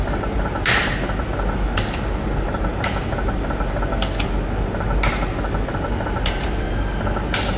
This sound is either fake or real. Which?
real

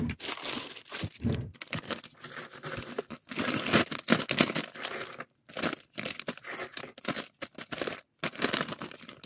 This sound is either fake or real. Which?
real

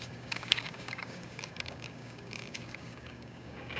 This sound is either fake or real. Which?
fake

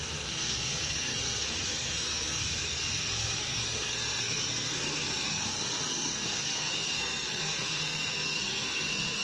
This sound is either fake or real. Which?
fake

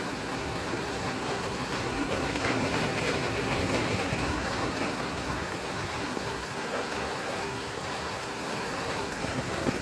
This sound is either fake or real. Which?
fake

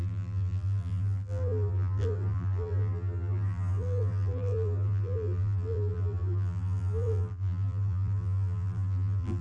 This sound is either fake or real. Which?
fake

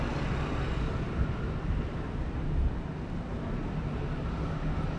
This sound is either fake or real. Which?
real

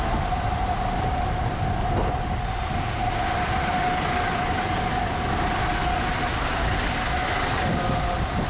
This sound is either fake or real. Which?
real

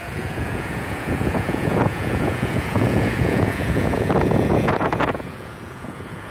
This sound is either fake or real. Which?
fake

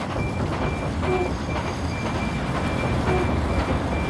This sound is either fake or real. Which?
real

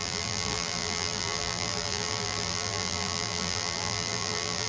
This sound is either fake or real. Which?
fake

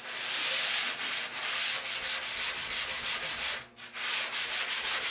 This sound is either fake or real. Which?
real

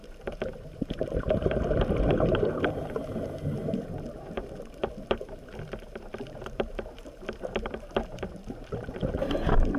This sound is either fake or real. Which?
fake